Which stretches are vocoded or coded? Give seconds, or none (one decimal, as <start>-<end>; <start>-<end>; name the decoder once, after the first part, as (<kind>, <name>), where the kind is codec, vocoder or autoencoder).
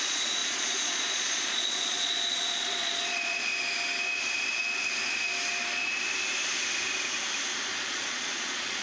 0.0-3.5 (vocoder, Vocos); 7.8-8.8